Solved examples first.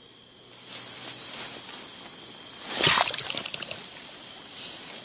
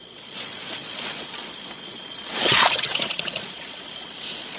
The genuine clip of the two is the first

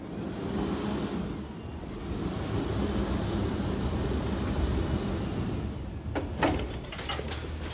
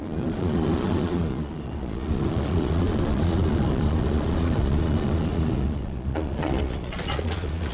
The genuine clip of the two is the first